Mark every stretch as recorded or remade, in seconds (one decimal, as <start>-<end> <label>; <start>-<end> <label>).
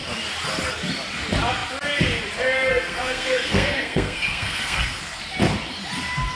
0.0-2.7 recorded; 2.7-5.2 remade; 5.2-6.4 recorded